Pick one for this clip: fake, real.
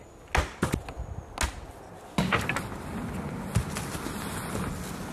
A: real